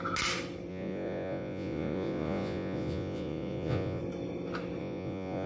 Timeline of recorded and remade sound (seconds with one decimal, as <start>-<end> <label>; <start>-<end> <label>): 0.0-0.7 recorded; 0.7-4.0 remade; 4.0-4.8 recorded; 4.8-5.5 remade